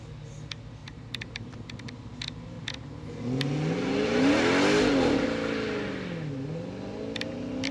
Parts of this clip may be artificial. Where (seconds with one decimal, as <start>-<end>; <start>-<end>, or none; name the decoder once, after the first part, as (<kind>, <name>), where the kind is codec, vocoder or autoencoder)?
0.8-1.9 (vocoder, BigVGAN v2)